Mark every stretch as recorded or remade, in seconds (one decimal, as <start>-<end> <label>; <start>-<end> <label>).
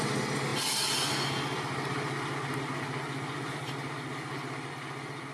0.0-5.3 recorded